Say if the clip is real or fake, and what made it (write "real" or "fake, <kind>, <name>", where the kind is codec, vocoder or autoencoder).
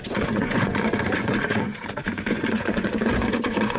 fake, vocoder, Vocos